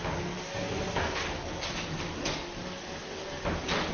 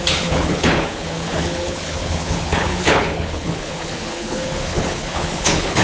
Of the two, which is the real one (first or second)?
first